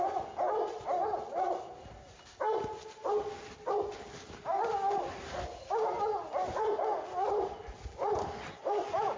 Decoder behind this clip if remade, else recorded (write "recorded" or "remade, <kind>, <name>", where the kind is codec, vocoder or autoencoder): recorded